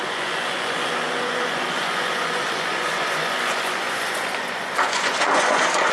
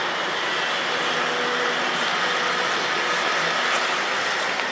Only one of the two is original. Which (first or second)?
second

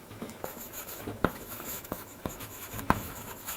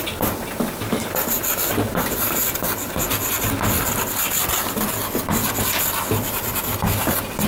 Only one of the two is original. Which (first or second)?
second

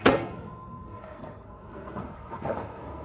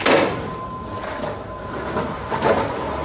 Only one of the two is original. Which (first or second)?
second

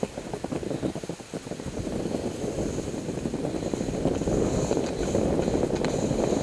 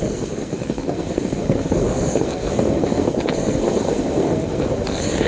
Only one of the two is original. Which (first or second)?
first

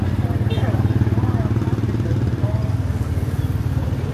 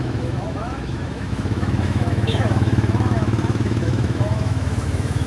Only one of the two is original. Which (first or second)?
first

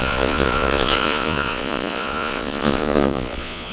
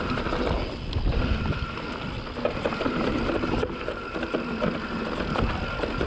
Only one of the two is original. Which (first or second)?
second